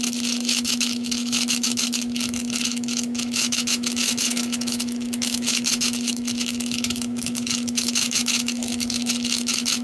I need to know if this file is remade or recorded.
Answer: remade